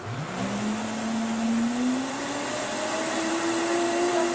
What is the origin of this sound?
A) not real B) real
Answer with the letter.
B